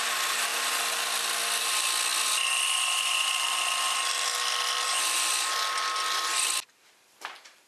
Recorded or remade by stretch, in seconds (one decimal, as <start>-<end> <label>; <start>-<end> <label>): 0.0-7.7 recorded